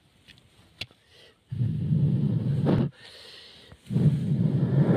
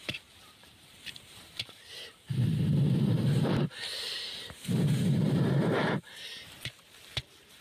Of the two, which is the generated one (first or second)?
second